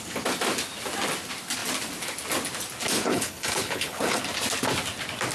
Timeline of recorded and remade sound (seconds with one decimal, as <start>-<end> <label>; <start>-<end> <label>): 0.0-3.1 recorded; 3.1-4.2 remade; 4.2-5.3 recorded